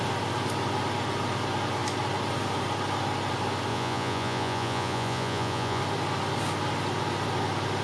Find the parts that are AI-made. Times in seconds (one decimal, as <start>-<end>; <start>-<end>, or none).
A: 3.7-5.8